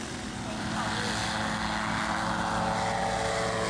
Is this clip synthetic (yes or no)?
no